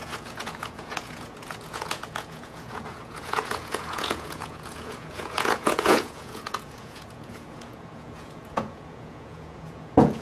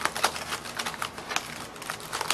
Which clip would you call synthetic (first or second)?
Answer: first